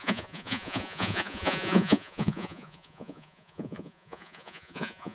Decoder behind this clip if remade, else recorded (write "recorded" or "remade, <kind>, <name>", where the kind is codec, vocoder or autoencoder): remade, vocoder, Vocos